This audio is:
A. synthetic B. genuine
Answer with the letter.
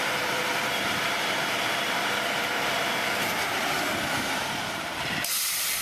A